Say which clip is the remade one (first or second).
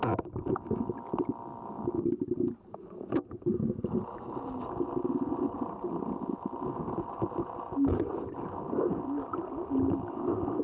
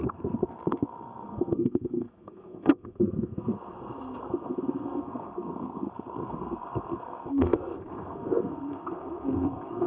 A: second